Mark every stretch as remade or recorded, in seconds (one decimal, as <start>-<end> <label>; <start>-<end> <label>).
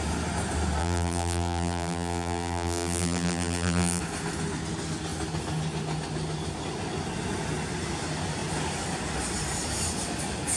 0.0-0.8 recorded; 0.8-4.0 remade; 4.0-10.6 recorded